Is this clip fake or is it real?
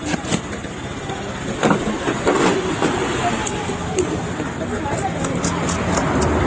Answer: real